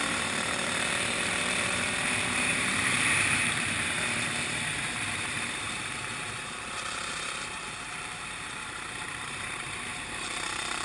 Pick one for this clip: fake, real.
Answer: fake